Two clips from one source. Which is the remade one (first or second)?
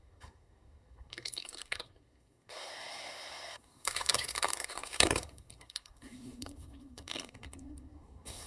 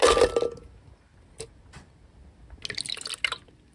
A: first